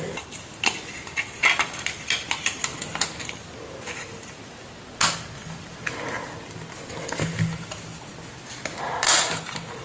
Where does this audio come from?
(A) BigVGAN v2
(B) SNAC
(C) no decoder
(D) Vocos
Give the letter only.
C